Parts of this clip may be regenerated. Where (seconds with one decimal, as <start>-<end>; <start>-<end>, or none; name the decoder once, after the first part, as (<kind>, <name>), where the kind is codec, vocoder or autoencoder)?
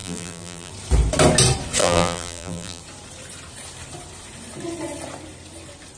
0.0-0.7 (vocoder, BigVGAN v2); 1.8-2.8